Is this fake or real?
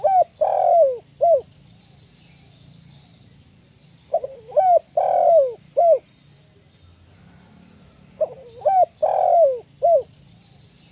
real